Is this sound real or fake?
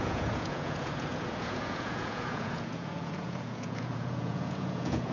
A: fake